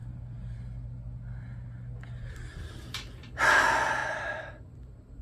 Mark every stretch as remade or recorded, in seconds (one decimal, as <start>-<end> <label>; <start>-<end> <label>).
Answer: 0.0-0.6 remade; 0.6-2.5 recorded; 2.5-3.4 remade; 3.4-4.0 recorded; 4.0-5.2 remade